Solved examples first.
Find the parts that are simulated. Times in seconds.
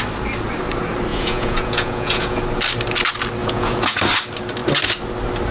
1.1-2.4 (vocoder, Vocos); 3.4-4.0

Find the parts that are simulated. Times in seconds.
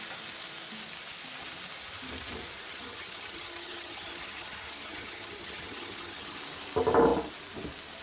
2.7-6.4 (vocoder, HiFi-GAN)